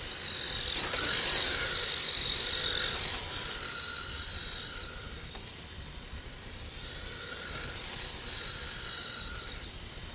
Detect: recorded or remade recorded